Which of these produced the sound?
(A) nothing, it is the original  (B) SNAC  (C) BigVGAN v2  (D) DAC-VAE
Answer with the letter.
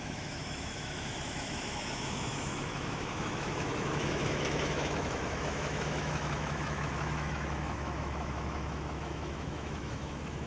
D